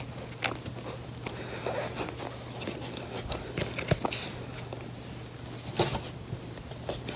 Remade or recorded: recorded